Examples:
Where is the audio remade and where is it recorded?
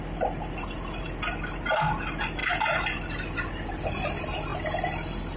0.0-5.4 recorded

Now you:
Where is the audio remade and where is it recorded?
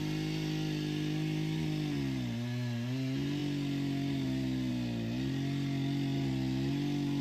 0.0-7.2 recorded